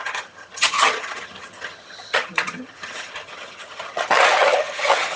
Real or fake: fake